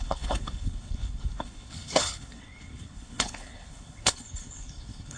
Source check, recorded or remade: remade